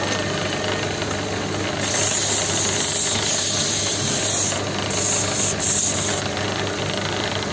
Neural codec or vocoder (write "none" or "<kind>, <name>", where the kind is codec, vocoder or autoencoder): none